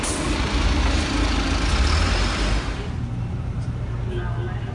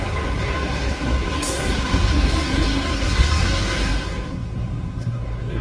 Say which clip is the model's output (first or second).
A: second